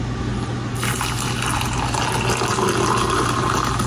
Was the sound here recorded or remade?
recorded